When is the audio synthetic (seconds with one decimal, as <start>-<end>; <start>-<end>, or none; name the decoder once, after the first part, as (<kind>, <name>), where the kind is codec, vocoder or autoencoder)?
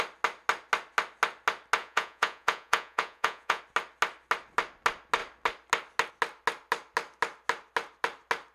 1.8-3.6 (vocoder, Vocos)